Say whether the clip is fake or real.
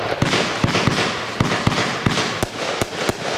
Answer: real